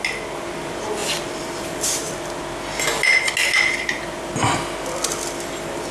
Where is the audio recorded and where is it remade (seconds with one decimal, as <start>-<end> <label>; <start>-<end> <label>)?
0.0-1.0 recorded; 1.0-2.4 remade; 2.4-3.7 recorded; 3.7-4.3 remade; 4.3-5.9 recorded